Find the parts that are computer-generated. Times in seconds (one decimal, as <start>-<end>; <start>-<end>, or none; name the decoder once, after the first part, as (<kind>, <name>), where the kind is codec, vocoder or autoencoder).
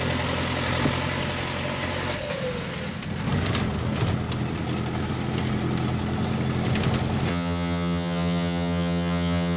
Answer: 7.3-9.6 (vocoder, HiFi-GAN)